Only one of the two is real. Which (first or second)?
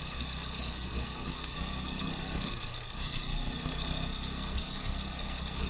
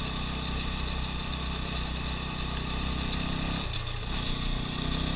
second